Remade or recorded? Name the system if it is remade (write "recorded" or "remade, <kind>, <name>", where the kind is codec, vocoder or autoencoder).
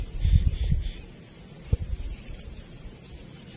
recorded